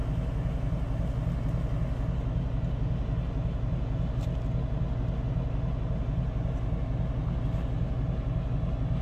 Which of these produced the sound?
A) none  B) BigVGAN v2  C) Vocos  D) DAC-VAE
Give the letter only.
A